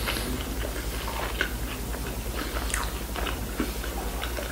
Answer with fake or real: real